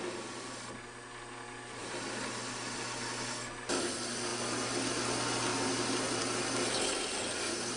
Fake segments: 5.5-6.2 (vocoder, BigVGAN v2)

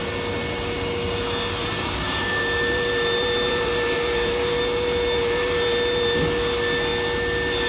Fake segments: 1.6-6.2 (vocoder, BigVGAN v2)

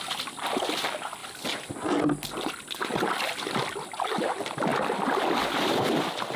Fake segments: none

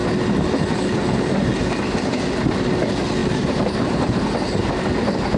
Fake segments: 3.2-4.7 (vocoder, BigVGAN v2)

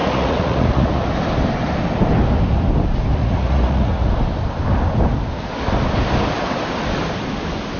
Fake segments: 0.0-1.0 (vocoder, Vocos); 3.2-4.1

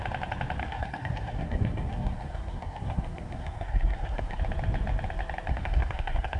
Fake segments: 0.6-4.4 (codec, SNAC); 5.5-6.4

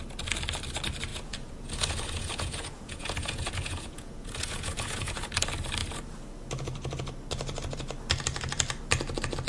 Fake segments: 1.1-5.3 (vocoder, Vocos)

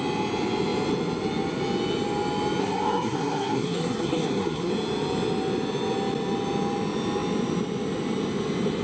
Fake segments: 2.6-4.7 (codec, SNAC)